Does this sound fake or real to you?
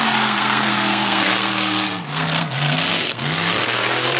fake